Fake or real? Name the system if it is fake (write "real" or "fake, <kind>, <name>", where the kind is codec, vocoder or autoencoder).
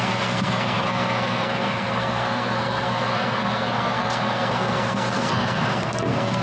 fake, codec, SNAC